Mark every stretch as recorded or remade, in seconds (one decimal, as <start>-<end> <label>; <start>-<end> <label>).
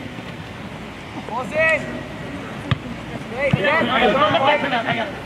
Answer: 0.0-0.6 remade; 0.6-3.8 recorded; 3.8-5.3 remade